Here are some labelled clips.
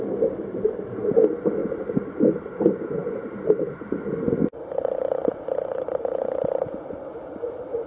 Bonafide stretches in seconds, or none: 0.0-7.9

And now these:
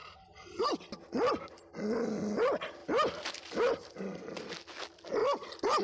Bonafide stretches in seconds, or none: 0.6-2.8; 4.5-5.2

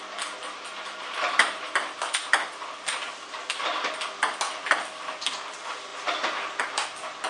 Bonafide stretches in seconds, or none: 0.0-5.9; 6.6-7.3

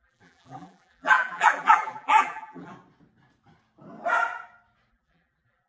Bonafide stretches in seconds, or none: 2.7-4.9

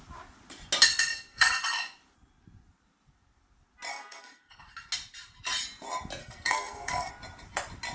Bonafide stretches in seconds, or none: 0.0-0.9; 1.6-3.9; 4.6-6.2; 7.1-7.9

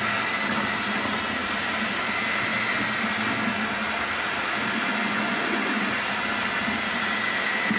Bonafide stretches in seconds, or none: 0.0-5.0; 5.7-7.8

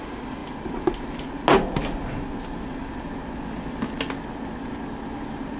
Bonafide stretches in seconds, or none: 0.0-5.6

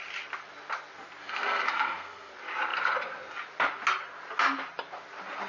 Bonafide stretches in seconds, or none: 0.0-1.2; 2.3-5.5